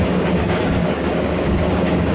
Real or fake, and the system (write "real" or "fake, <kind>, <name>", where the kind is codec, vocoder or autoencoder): fake, codec, DAC